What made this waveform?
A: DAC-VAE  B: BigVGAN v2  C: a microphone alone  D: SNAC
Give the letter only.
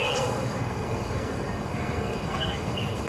D